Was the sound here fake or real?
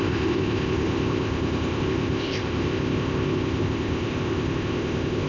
fake